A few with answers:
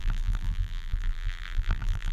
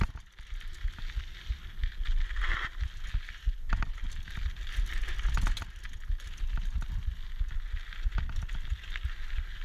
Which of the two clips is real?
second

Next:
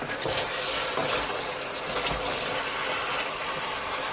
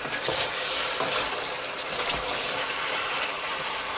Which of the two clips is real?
first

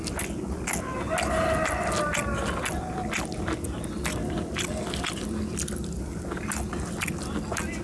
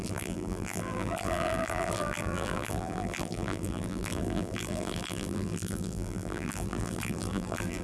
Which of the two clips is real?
first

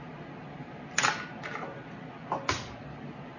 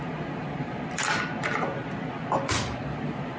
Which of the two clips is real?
first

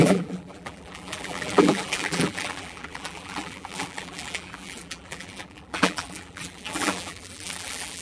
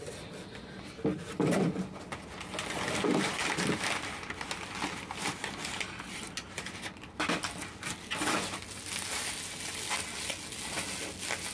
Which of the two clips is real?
second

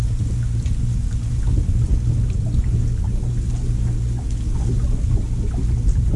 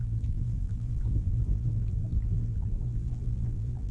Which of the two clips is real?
first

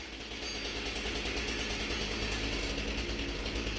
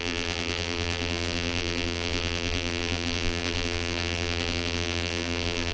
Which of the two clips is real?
first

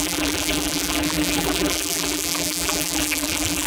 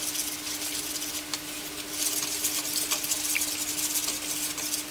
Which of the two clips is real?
second